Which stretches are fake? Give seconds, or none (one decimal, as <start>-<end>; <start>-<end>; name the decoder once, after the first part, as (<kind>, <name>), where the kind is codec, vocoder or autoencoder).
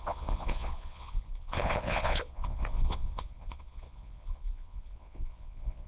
0.0-5.9 (vocoder, Vocos)